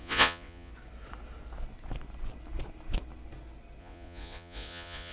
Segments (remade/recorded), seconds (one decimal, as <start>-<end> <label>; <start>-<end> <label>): 0.0-0.7 remade; 0.7-3.8 recorded; 3.8-5.1 remade

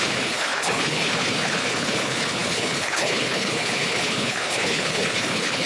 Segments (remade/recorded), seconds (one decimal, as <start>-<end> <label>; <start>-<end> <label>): 0.0-5.7 remade

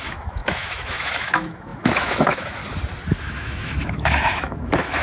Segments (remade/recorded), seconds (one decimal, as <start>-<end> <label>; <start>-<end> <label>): 0.0-2.6 remade; 2.6-3.2 recorded; 3.2-5.0 remade

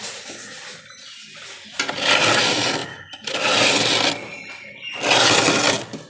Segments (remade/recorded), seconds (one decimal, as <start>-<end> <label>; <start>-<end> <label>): 0.0-6.1 recorded

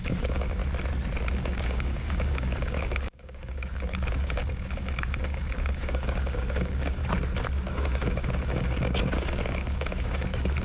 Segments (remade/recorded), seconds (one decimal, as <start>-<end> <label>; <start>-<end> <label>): 0.0-0.6 remade; 0.6-1.3 recorded; 1.3-7.0 remade; 7.0-7.7 recorded; 7.7-10.6 remade

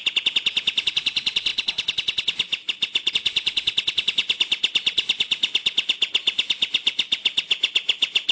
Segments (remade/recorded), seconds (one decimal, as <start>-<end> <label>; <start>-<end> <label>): 0.0-1.5 recorded; 1.5-3.1 remade; 3.1-4.2 recorded; 4.2-5.2 remade; 5.2-8.3 recorded

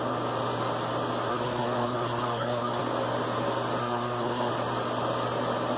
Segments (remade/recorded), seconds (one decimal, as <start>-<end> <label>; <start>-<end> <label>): 0.0-1.3 recorded; 1.3-2.8 remade; 2.8-3.8 recorded; 3.8-4.5 remade; 4.5-5.8 recorded

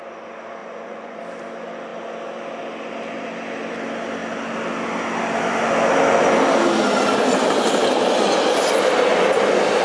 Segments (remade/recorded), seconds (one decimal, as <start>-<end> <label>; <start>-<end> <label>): 0.0-0.6 recorded; 0.6-1.2 remade; 1.2-9.8 recorded